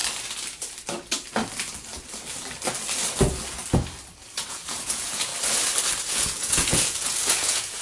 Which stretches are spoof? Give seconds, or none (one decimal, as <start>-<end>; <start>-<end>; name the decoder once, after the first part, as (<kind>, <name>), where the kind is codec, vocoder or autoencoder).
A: 4.5-5.3 (vocoder, Vocos); 6.0-7.8